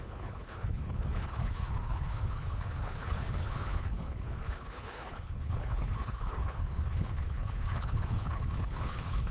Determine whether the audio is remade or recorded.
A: remade